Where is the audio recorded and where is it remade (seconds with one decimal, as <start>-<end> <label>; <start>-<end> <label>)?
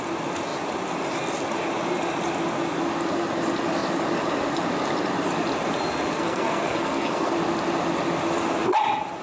0.0-6.1 recorded; 6.1-7.3 remade; 7.3-9.2 recorded